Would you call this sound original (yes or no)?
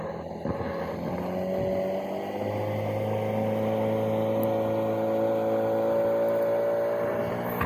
yes